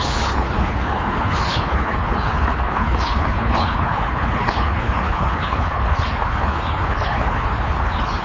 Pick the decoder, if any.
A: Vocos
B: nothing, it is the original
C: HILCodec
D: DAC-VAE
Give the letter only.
C